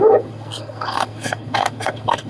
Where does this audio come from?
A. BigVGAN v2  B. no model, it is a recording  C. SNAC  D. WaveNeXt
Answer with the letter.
C